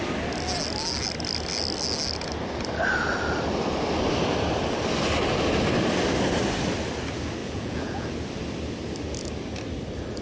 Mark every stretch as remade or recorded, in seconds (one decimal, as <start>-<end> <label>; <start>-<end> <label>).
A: 0.0-7.4 recorded; 7.4-8.1 remade; 8.1-10.2 recorded

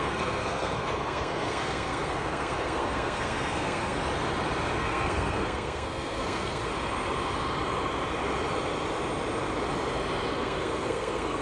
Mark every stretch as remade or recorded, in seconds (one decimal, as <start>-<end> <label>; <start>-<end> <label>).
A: 0.0-4.0 remade; 4.0-4.8 recorded; 4.8-6.7 remade; 6.7-10.3 recorded; 10.3-11.4 remade

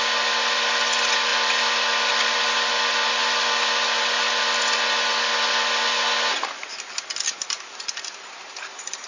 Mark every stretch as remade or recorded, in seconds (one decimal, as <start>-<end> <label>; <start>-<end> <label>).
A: 0.0-9.1 recorded

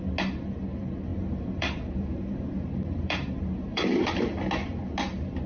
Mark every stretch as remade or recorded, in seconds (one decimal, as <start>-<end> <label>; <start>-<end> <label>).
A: 0.0-1.1 recorded; 1.1-4.2 remade; 4.2-5.5 recorded